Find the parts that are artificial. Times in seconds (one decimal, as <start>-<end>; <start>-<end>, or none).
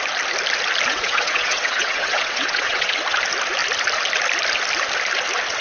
0.9-2.9